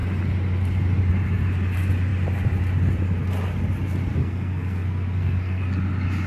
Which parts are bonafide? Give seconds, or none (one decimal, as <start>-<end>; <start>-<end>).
0.0-4.2; 5.6-6.3